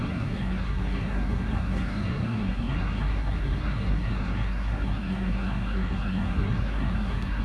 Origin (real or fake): fake